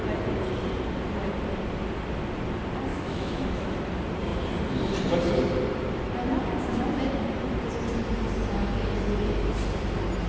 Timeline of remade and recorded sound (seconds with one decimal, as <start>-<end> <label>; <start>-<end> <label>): 0.0-2.9 recorded; 2.9-3.7 remade; 3.7-10.3 recorded